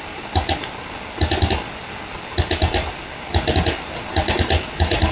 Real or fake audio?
real